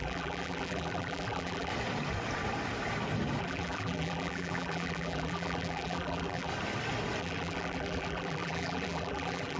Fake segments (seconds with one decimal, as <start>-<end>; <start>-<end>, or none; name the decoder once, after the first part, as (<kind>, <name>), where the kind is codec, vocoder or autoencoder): 0.0-1.7 (vocoder, BigVGAN v2); 3.4-6.5; 7.2-9.6